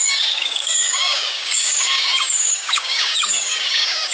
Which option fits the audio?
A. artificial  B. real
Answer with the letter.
A